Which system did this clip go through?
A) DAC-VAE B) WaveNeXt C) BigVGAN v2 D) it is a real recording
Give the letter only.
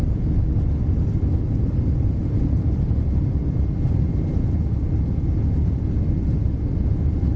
D